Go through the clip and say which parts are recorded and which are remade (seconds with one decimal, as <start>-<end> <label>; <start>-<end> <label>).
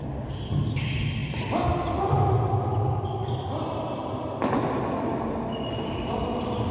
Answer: 0.0-6.7 recorded